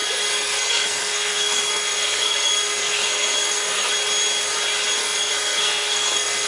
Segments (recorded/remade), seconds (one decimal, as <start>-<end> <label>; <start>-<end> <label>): 0.0-3.9 remade; 3.9-5.0 recorded; 5.0-6.5 remade